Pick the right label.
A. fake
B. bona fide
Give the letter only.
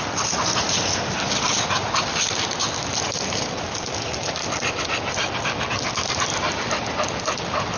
A